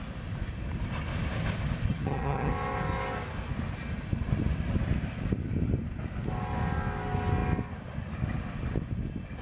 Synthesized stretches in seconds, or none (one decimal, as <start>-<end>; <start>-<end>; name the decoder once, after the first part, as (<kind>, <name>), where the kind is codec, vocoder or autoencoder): 1.9-2.5 (vocoder, HiFi-GAN)